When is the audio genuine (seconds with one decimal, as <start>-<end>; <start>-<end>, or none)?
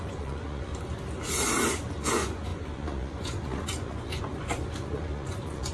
0.7-1.9